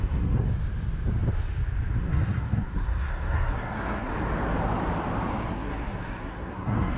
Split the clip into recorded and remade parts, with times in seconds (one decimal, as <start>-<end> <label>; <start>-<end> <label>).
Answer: 0.0-0.5 remade; 0.5-2.0 recorded; 2.0-4.1 remade; 4.1-5.5 recorded; 5.5-7.0 remade